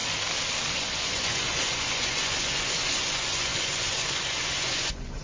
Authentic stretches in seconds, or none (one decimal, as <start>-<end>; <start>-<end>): 0.0-0.7